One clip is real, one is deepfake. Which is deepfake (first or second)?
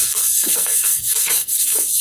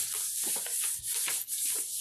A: first